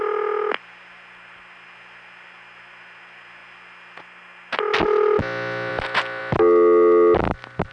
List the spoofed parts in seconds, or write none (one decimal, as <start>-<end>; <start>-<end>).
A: none